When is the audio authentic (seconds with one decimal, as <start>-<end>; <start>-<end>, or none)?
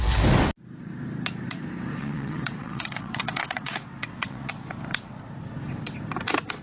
0.0-2.0; 4.5-6.6